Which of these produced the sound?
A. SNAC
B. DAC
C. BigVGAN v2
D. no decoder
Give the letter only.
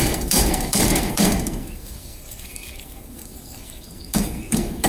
A